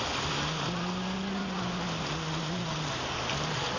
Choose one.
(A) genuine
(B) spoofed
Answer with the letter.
A